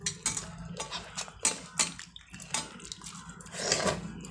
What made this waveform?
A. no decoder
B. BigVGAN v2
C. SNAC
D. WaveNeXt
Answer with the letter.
A